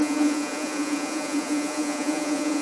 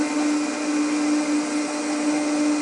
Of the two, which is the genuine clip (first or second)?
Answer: second